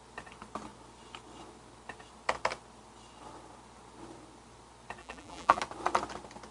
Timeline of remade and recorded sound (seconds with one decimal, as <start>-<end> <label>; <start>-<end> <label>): 0.0-5.0 recorded; 5.0-5.6 remade; 5.6-6.5 recorded